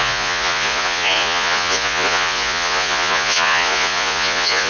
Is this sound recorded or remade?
remade